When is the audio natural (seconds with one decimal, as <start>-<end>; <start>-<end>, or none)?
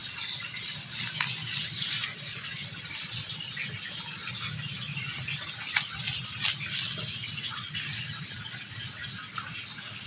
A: 4.3-10.1